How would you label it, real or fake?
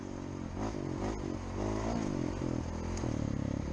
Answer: real